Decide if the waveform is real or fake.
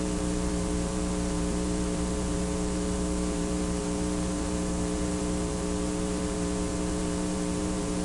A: fake